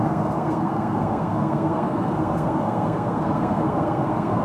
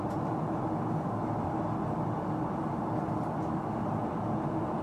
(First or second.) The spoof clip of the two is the first